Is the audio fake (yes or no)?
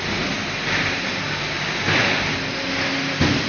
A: no